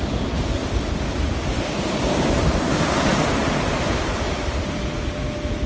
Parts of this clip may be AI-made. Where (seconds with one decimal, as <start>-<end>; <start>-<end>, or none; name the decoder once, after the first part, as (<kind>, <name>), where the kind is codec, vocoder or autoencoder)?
0.6-2.7 (vocoder, BigVGAN v2)